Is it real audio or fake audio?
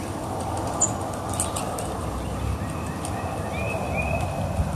real